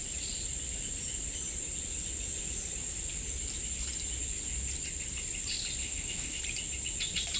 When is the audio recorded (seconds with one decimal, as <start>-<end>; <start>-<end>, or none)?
0.0-5.8; 6.4-7.4